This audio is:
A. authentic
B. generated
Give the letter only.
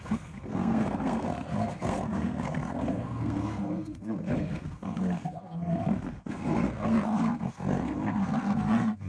B